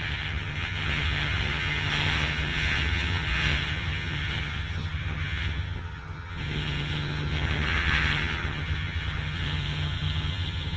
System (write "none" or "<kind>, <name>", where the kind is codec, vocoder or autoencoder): vocoder, HiFi-GAN